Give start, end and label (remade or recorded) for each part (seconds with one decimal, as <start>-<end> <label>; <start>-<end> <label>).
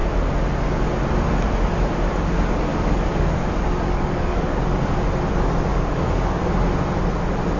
0.0-2.7 recorded; 2.7-4.6 remade; 4.6-5.7 recorded; 5.7-6.4 remade; 6.4-7.6 recorded